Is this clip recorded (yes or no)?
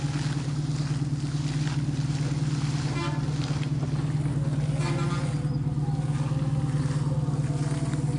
yes